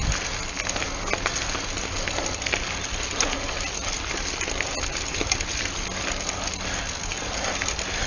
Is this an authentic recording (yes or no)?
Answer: yes